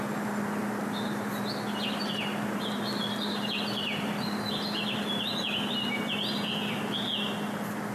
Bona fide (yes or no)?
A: yes